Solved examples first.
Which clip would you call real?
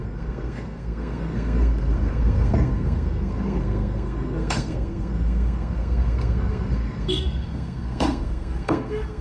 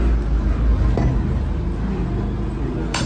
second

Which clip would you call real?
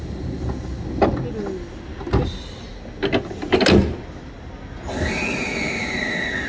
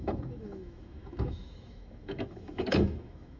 first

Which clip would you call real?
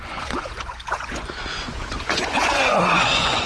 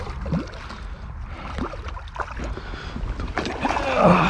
second